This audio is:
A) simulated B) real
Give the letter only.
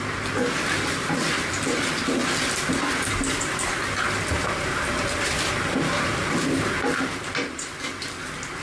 B